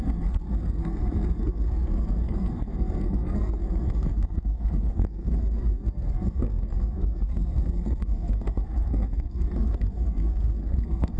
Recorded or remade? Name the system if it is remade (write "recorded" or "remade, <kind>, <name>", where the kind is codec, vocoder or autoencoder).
remade, codec, SNAC